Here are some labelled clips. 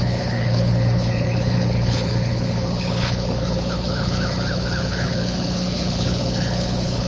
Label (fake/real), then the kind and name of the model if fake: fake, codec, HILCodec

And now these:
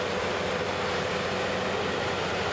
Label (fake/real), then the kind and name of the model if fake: real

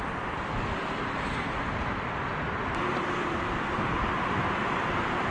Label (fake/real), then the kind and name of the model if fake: real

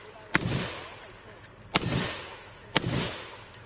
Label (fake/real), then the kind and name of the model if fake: real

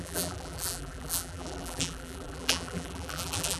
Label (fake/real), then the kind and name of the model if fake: fake, vocoder, BigVGAN v2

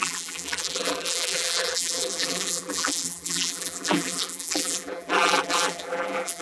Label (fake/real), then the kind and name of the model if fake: fake, vocoder, BigVGAN v2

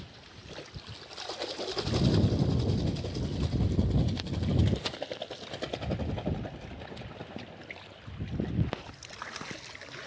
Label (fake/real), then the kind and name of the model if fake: real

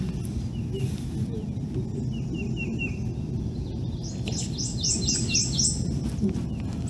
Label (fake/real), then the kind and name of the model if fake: real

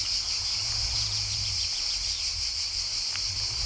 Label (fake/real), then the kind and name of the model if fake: real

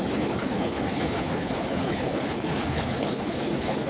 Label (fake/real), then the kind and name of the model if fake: fake, codec, HILCodec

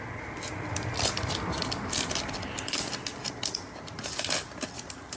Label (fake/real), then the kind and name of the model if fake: real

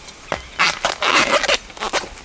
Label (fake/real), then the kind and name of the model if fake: real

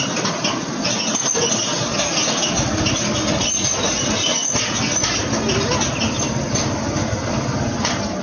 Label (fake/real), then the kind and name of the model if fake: real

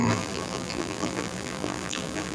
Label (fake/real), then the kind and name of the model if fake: fake, vocoder, BigVGAN v2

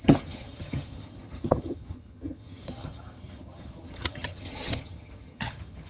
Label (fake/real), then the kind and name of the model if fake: fake, vocoder, HiFi-GAN